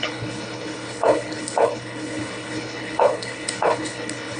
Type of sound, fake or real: fake